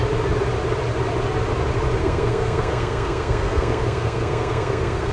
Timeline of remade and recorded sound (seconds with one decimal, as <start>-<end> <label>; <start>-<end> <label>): 0.0-2.0 recorded; 2.0-5.1 remade